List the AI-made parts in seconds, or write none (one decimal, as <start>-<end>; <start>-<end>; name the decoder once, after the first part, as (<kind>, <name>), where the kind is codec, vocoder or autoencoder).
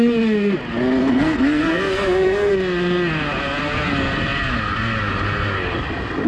1.0-2.5 (codec, SNAC)